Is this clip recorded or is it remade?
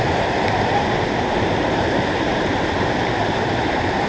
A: remade